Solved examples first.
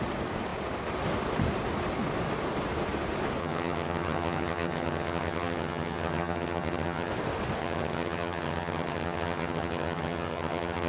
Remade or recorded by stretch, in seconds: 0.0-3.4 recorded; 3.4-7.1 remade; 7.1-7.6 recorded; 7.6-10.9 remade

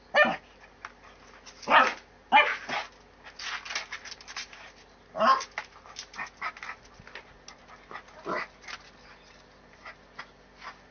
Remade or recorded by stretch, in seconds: 0.0-10.9 recorded

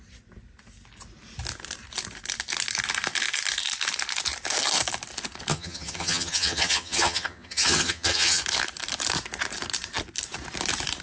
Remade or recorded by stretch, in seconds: 0.0-5.5 recorded; 5.5-8.4 remade; 8.4-11.0 recorded